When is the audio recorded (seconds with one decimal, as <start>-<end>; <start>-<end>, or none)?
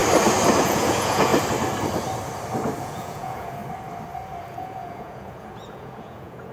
0.0-0.6; 1.3-2.8; 3.6-4.4